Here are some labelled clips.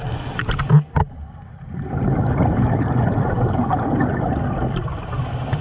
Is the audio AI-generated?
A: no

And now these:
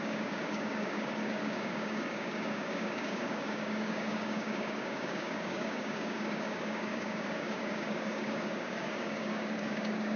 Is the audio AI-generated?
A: yes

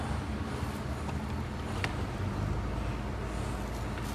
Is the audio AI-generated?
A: no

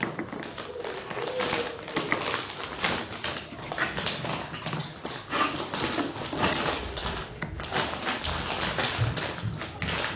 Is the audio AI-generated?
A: no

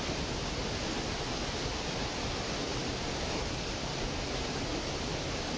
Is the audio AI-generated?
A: no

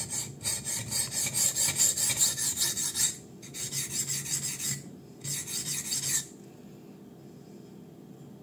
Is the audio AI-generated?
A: no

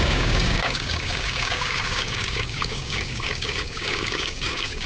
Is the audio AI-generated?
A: yes